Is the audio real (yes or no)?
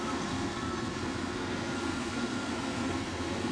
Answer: no